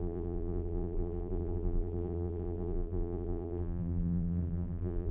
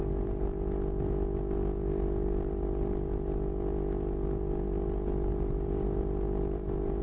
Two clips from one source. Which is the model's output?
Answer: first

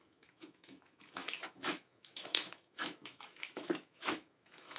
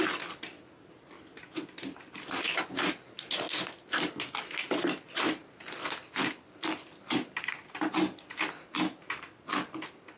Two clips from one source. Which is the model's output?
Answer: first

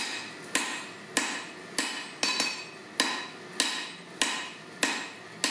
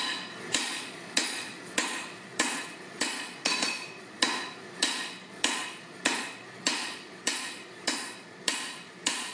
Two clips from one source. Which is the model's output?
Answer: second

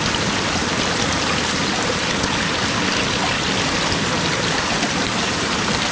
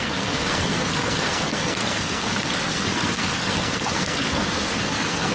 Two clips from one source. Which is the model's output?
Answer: second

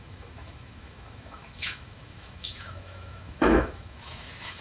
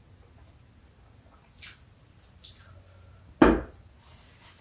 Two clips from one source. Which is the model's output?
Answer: first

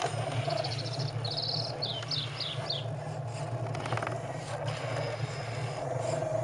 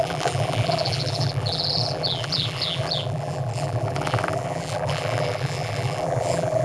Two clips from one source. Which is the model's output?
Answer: second